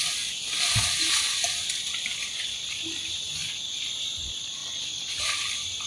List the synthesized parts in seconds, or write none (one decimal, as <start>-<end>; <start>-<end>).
none